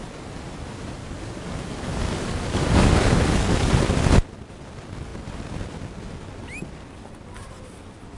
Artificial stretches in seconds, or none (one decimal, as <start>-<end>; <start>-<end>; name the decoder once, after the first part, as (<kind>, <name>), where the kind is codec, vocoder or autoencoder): 1.0-3.7 (codec, DAC)